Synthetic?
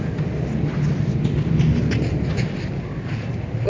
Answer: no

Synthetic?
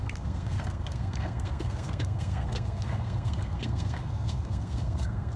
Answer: yes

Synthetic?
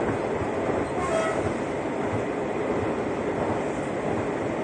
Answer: no